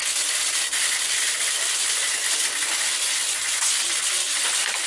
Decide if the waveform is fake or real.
real